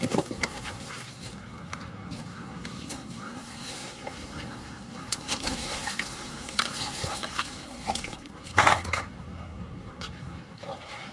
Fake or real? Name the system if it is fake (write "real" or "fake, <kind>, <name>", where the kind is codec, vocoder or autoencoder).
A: fake, codec, SNAC